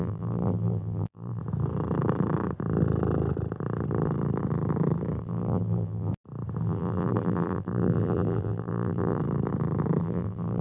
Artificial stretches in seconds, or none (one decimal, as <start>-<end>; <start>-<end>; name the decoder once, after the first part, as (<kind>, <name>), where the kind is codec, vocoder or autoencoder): 0.0-1.4 (vocoder, BigVGAN v2); 5.2-6.1; 6.6-9.2; 10.0-10.6